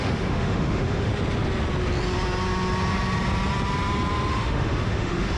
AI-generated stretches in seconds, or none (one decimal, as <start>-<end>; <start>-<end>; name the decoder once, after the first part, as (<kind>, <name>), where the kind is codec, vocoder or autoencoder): 0.0-1.1 (autoencoder, DAC-VAE); 4.3-5.4

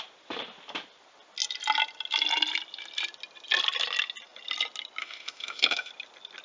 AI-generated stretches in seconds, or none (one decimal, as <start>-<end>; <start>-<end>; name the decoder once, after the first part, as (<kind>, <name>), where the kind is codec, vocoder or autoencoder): 5.0-5.9 (autoencoder, DAC-VAE)